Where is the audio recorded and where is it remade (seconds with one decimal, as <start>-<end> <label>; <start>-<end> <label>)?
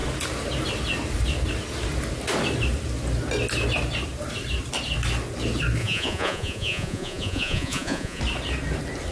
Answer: 0.0-5.8 recorded; 5.8-8.2 remade; 8.2-9.1 recorded